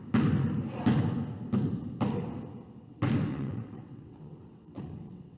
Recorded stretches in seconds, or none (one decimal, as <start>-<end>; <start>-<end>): 0.0-3.3